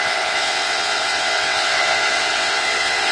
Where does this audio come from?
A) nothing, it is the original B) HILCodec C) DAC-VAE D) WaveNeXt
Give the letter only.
D